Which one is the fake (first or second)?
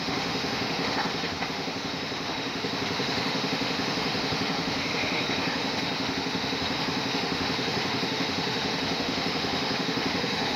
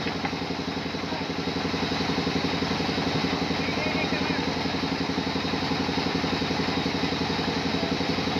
first